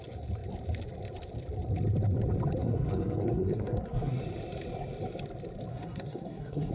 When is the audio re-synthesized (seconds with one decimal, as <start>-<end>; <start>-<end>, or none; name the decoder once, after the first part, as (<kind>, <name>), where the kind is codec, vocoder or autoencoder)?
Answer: 2.6-4.2 (codec, SNAC); 5.7-6.7